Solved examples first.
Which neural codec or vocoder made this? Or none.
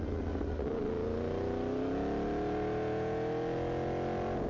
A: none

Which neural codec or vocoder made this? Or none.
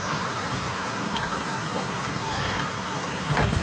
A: codec, SNAC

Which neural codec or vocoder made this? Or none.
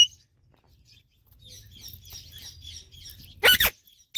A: none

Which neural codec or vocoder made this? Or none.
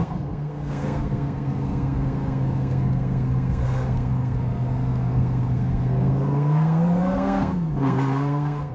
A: codec, SNAC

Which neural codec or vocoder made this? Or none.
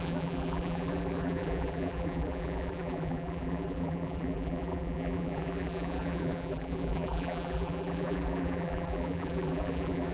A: vocoder, BigVGAN v2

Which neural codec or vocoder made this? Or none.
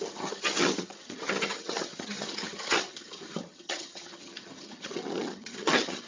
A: vocoder, HiFi-GAN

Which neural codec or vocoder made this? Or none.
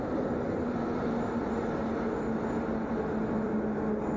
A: none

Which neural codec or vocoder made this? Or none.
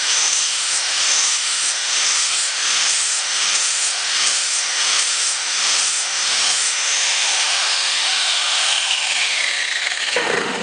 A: autoencoder, DAC-VAE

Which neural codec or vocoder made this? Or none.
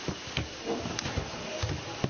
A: none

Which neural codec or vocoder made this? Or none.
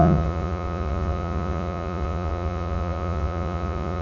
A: vocoder, Vocos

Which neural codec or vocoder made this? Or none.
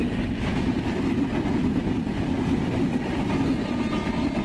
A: none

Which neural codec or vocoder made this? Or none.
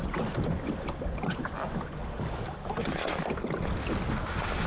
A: none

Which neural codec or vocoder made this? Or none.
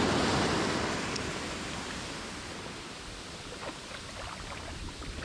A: none